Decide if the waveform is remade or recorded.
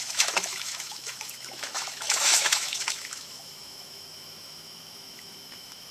remade